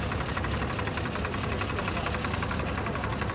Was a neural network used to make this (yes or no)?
no